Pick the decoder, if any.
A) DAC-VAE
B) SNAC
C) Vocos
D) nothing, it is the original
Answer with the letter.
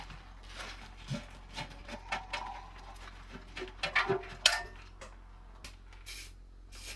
D